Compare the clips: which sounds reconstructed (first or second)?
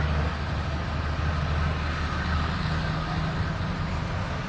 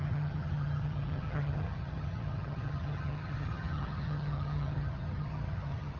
second